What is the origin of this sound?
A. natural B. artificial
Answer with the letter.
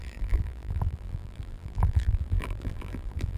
B